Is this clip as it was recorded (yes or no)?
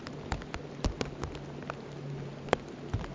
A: yes